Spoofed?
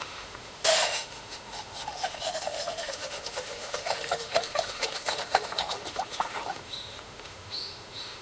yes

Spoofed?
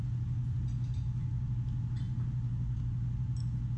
no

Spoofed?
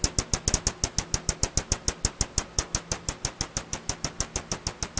no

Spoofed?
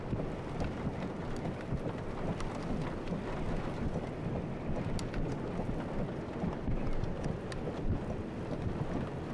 no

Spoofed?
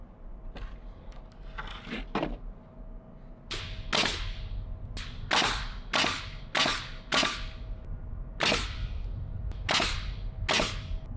no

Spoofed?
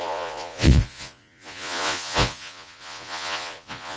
yes